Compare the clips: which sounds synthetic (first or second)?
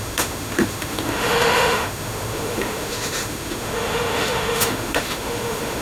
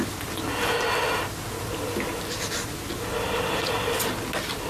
first